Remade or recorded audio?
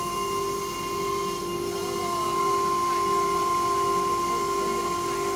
recorded